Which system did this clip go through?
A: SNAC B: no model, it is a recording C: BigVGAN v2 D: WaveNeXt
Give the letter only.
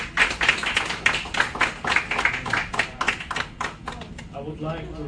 B